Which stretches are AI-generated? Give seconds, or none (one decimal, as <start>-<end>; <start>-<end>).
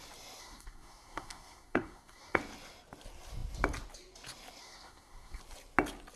0.4-2.4; 4.6-5.4